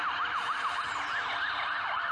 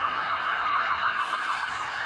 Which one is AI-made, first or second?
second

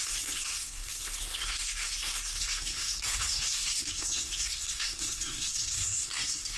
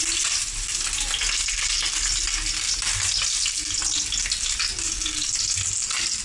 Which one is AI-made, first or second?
first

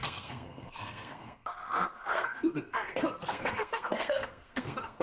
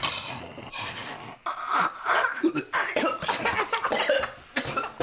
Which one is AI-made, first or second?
first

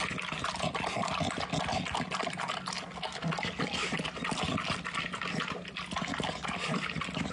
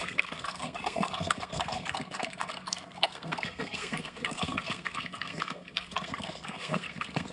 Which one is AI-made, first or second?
second